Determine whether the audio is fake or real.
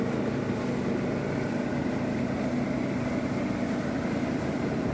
real